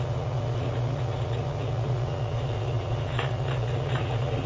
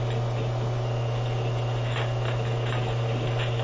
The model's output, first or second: first